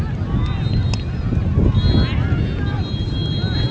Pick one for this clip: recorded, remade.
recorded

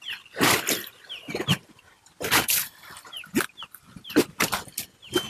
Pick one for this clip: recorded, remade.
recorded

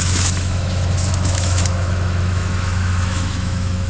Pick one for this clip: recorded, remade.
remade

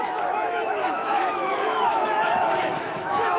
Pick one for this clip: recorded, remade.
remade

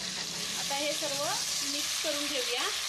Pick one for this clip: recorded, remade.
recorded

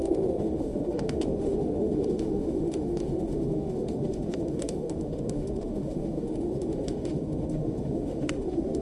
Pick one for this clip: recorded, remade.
remade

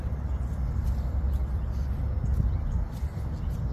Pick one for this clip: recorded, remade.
recorded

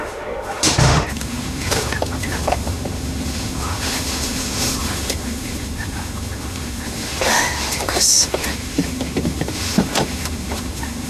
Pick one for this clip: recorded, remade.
remade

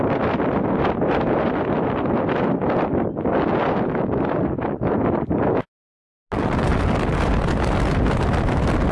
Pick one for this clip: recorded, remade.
recorded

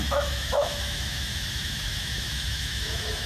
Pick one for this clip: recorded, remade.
remade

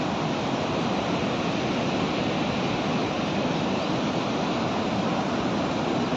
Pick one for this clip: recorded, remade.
recorded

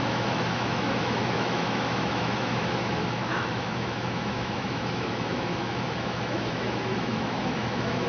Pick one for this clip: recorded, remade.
remade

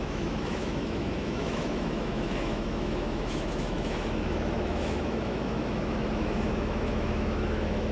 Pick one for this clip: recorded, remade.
remade